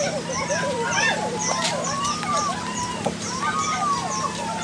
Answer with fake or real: real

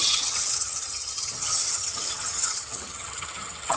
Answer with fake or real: fake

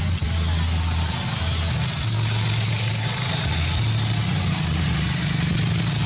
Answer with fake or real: real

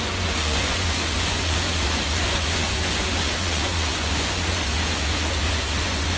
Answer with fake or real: fake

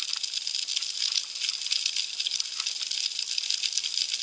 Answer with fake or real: real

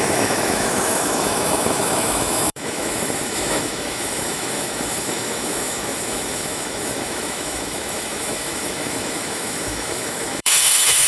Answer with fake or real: fake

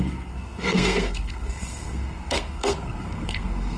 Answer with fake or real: fake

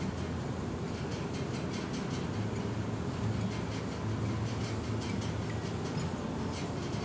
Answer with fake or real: real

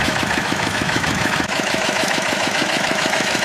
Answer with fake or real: fake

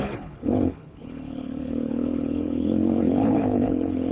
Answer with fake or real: fake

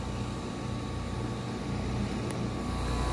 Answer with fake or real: real